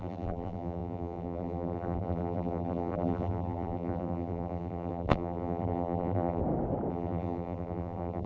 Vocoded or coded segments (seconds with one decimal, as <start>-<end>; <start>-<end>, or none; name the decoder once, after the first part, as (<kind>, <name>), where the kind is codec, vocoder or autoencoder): 0.0-6.4 (vocoder, BigVGAN v2); 6.9-8.3